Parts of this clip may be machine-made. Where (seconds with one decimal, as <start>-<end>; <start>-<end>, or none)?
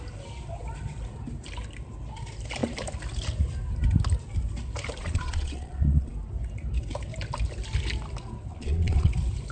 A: 5.0-6.1; 8.5-9.1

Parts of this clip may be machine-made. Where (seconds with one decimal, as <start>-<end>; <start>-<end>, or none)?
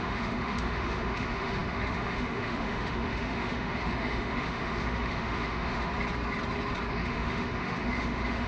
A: 0.0-5.9; 6.9-8.5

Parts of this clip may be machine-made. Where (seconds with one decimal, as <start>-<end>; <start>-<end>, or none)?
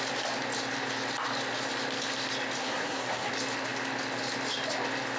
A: 2.6-3.3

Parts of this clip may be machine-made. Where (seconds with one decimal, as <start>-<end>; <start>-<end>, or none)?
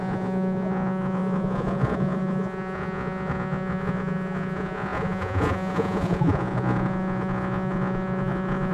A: 0.0-8.7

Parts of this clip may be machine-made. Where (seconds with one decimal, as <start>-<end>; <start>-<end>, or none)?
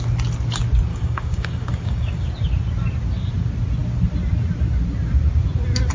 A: 0.9-2.3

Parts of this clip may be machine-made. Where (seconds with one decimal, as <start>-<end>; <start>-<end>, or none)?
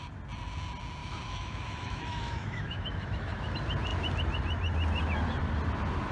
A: 1.0-3.5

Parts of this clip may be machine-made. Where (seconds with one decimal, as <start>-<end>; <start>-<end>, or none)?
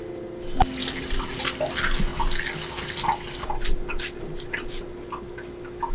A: 0.8-1.4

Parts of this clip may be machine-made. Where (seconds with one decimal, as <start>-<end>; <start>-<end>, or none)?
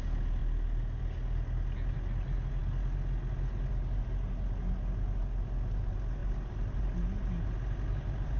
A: 0.4-1.0; 6.2-6.8